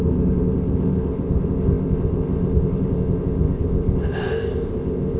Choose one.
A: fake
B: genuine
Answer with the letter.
A